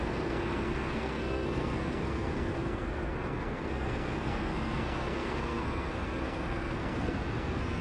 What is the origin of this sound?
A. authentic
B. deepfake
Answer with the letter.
B